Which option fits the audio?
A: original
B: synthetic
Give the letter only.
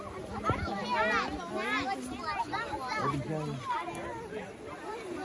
A